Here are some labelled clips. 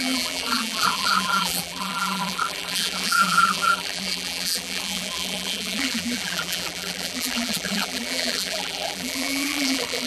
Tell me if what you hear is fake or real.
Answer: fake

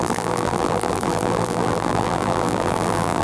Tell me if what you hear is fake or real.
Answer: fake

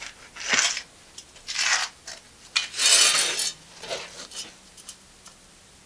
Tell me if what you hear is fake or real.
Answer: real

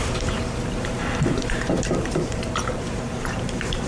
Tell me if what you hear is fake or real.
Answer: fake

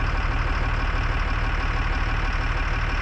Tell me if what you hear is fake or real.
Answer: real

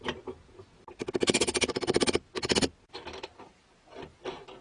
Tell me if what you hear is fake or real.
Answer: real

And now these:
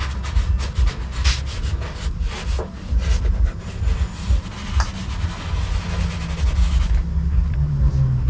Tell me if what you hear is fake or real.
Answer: real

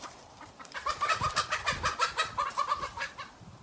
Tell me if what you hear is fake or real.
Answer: fake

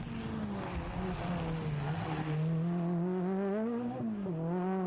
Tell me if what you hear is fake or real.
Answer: real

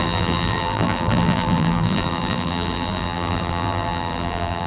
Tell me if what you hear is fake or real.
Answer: fake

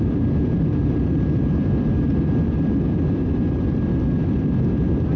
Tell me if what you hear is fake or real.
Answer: fake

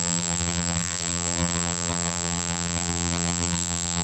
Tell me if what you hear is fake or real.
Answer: fake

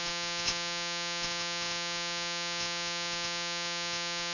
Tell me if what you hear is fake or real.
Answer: fake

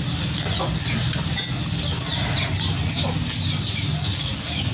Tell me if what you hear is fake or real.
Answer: real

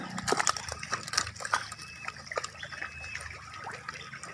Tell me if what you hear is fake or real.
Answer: real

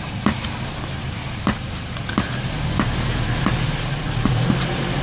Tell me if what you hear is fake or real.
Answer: fake